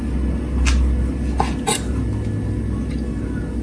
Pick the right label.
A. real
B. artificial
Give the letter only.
A